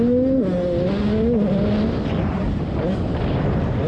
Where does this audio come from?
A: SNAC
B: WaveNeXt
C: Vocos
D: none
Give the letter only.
D